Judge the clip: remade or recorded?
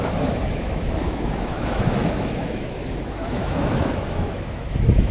remade